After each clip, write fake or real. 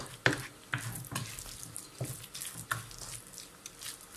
real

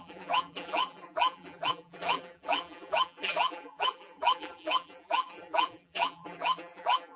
fake